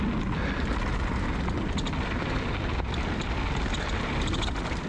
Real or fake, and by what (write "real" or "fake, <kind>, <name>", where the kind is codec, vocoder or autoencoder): real